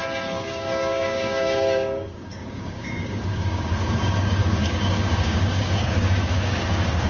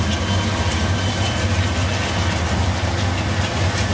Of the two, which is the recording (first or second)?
second